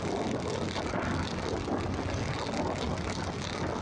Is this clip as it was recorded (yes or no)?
yes